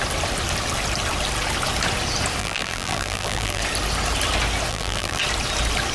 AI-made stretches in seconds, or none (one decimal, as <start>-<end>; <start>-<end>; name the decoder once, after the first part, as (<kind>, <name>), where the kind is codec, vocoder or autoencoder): 2.4-3.6 (vocoder, BigVGAN v2); 4.7-5.2